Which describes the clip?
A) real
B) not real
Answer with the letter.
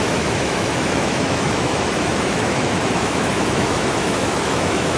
B